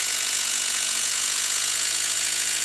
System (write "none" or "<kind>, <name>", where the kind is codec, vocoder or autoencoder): vocoder, Vocos